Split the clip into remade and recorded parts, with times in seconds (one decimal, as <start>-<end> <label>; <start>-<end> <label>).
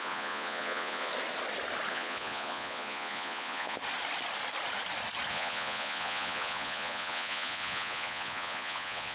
0.0-1.1 remade; 1.1-1.9 recorded; 1.9-3.8 remade; 3.8-5.3 recorded; 5.3-9.1 remade